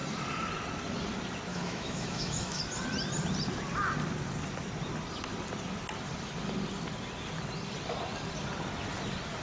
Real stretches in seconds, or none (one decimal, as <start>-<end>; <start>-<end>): 0.0-1.5; 2.6-9.4